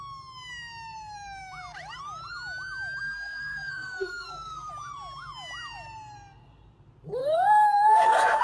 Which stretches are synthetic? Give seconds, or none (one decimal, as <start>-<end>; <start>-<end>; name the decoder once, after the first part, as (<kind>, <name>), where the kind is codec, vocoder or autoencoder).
3.0-4.7 (codec, SNAC); 7.2-8.4